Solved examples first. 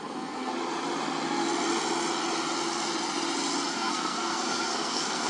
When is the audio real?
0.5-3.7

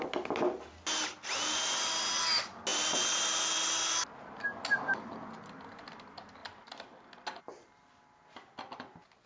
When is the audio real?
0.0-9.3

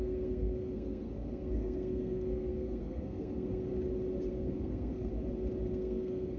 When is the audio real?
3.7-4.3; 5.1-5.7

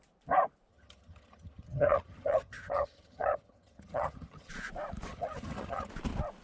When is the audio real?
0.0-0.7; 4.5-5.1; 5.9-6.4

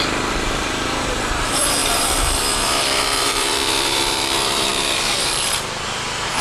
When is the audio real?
none